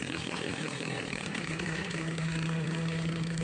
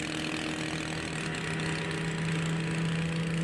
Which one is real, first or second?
second